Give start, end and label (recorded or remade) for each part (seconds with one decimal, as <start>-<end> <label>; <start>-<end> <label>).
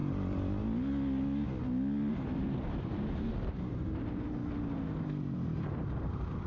0.0-2.1 recorded; 2.1-4.4 remade; 4.4-5.0 recorded; 5.0-6.5 remade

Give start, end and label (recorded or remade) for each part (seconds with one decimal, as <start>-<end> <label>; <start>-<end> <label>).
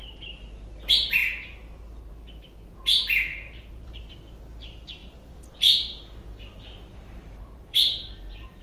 0.0-3.3 recorded; 3.3-4.1 remade; 4.1-5.0 recorded; 5.0-8.6 remade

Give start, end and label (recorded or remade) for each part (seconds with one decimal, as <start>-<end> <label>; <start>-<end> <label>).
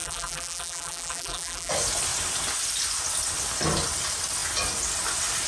0.0-1.7 remade; 1.7-5.5 recorded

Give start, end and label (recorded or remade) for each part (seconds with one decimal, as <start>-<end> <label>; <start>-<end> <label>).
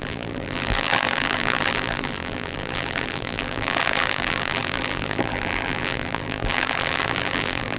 0.0-7.8 remade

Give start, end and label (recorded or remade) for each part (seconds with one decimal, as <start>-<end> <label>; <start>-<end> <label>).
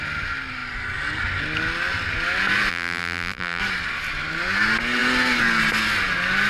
0.0-2.7 recorded; 2.7-3.6 remade; 3.6-6.5 recorded